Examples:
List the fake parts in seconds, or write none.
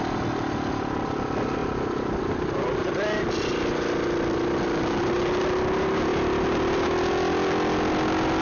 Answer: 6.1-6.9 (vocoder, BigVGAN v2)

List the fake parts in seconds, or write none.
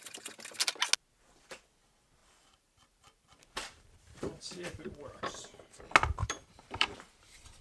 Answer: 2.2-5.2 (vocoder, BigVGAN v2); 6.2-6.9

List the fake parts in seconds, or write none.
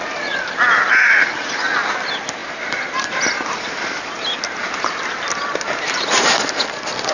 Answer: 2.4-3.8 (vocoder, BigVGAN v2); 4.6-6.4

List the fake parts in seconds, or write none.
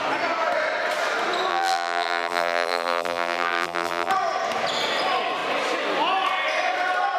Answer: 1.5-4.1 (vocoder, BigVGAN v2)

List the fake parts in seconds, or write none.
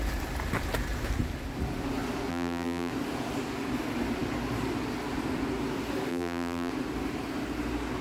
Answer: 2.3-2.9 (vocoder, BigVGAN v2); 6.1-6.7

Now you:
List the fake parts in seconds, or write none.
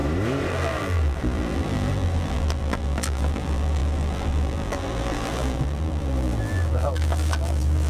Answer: 0.5-7.9 (vocoder, BigVGAN v2)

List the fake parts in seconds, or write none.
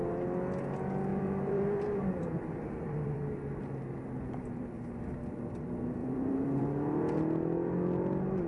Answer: 1.1-3.6 (vocoder, BigVGAN v2); 6.0-6.6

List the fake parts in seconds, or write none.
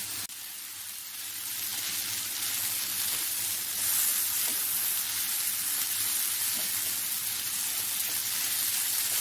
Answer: none